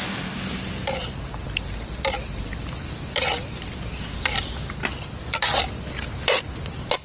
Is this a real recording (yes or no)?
yes